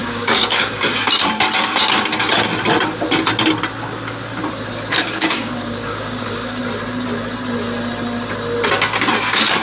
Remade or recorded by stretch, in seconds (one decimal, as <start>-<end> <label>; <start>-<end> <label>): 0.0-0.8 remade; 0.8-5.0 recorded; 5.0-6.6 remade; 6.6-9.6 recorded